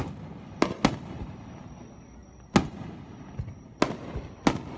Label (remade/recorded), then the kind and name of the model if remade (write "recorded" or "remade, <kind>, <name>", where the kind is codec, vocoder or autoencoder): recorded